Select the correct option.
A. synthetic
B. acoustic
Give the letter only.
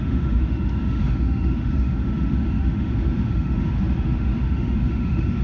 A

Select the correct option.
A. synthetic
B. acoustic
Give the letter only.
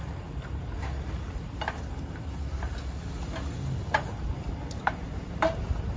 B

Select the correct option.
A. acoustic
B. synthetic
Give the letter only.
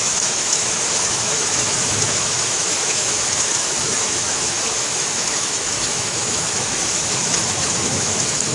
B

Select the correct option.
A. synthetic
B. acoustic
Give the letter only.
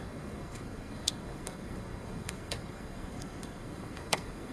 A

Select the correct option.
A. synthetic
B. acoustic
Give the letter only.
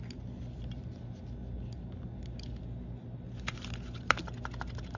B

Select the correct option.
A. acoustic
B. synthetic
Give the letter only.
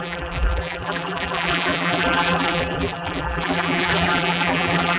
B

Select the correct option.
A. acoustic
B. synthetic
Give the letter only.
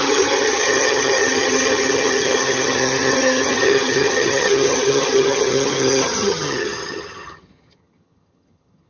B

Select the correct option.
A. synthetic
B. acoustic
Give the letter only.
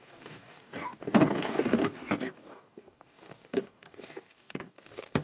A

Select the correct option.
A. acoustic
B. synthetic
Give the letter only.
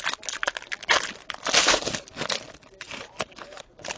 A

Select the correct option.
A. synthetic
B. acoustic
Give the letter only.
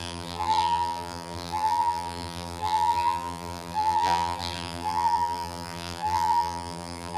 A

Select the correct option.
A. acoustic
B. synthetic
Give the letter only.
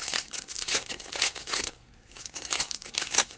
B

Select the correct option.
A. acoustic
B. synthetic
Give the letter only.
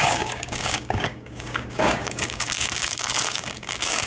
B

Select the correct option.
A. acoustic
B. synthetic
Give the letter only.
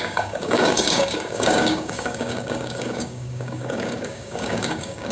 B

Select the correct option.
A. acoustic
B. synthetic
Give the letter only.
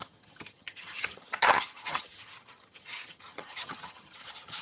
B